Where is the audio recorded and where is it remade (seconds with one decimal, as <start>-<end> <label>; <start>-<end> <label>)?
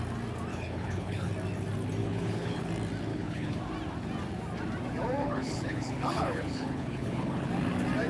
0.0-0.5 recorded; 0.5-1.3 remade; 1.3-2.0 recorded; 2.0-2.7 remade; 2.7-3.1 recorded; 3.1-3.6 remade; 3.6-5.2 recorded; 5.2-7.5 remade; 7.5-8.1 recorded